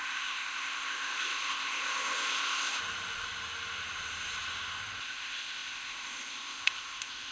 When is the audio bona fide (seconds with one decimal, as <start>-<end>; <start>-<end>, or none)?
2.8-5.0